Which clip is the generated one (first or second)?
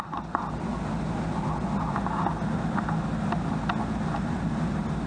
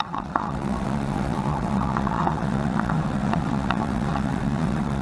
second